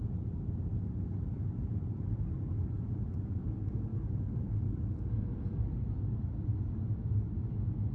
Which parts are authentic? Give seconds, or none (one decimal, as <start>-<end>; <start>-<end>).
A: 0.0-3.9; 4.9-7.9

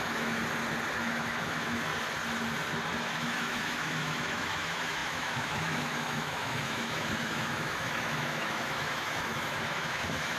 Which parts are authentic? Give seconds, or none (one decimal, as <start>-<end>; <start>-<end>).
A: 0.4-1.0; 1.9-3.0